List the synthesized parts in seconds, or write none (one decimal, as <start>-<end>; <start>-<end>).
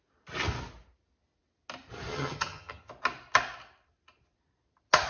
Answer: 2.1-2.9